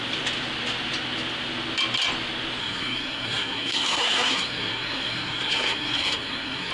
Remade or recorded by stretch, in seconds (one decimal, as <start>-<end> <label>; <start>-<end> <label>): 0.0-2.6 recorded; 2.6-6.7 remade